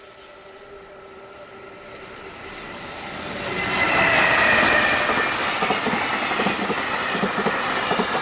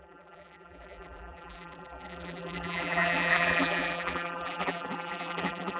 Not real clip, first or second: second